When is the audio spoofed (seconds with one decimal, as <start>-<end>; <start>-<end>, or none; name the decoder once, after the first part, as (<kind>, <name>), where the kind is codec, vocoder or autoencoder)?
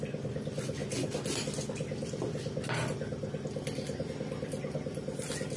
none